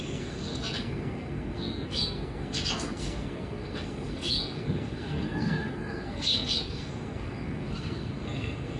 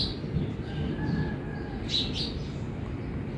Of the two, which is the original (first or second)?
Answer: second